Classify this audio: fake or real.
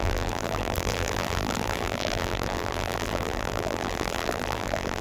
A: fake